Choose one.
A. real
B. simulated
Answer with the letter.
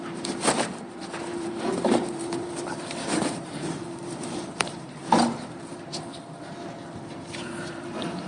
B